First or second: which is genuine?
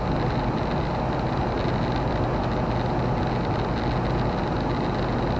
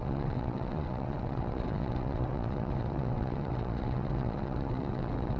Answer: first